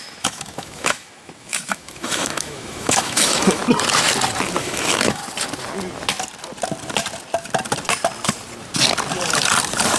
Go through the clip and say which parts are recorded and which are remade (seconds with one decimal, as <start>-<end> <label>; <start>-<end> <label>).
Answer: 0.0-3.6 remade; 3.6-4.6 recorded; 4.6-5.2 remade; 5.2-10.0 recorded